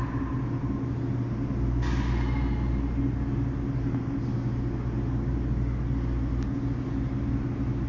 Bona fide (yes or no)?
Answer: yes